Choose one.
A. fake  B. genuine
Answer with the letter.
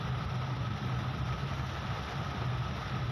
B